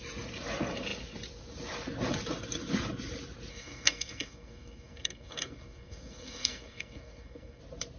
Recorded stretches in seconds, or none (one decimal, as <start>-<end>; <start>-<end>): 0.0-3.5; 7.6-8.0